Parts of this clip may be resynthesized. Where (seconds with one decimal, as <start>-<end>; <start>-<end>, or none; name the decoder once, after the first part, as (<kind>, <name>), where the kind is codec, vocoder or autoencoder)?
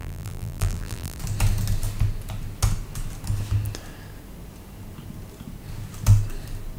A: 0.0-1.2 (vocoder, BigVGAN v2)